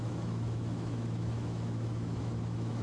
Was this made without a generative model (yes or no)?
no